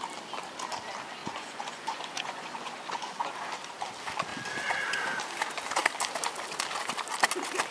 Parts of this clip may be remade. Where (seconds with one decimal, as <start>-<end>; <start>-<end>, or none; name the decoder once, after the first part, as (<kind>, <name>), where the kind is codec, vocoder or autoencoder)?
1.2-3.3 (vocoder, Vocos)

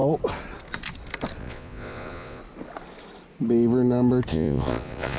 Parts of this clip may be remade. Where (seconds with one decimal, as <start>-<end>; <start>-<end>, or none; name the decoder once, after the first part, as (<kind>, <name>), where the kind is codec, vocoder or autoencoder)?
1.4-2.4 (vocoder, Vocos); 4.3-5.2

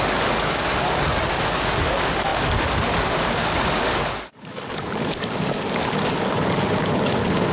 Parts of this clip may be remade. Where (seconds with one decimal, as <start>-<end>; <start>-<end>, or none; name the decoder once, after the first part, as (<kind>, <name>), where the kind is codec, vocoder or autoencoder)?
0.0-7.5 (codec, DAC)

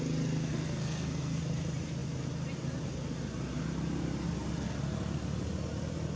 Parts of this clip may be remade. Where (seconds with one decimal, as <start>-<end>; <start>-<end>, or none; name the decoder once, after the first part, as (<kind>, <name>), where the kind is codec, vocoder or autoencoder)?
0.5-1.4 (codec, SNAC)

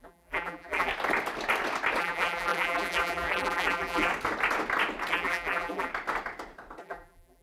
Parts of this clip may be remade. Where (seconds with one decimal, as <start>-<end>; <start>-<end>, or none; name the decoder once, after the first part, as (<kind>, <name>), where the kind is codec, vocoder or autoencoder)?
0.0-0.9 (vocoder, BigVGAN v2); 2.0-4.1; 5.1-5.9; 6.8-7.4

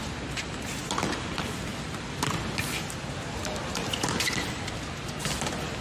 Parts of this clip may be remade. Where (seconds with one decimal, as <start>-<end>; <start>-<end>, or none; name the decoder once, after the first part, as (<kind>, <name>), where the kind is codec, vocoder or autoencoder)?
none

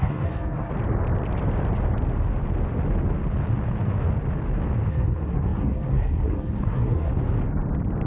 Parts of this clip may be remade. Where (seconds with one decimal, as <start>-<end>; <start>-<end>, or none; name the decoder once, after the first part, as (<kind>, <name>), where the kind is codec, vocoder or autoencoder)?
0.0-0.7 (codec, SNAC); 4.9-7.1

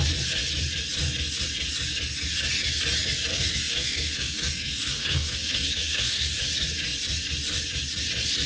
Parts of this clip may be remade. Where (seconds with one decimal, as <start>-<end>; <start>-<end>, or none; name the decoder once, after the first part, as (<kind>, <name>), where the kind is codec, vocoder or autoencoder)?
3.3-6.4 (codec, SNAC)